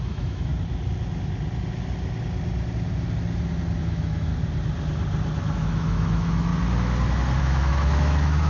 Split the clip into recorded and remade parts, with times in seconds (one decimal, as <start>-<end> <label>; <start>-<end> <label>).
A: 0.0-0.5 remade; 0.5-3.8 recorded; 3.8-4.3 remade; 4.3-5.5 recorded; 5.5-6.5 remade; 6.5-7.4 recorded; 7.4-8.5 remade